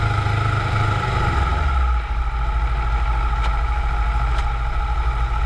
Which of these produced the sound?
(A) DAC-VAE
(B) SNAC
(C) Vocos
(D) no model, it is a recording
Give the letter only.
D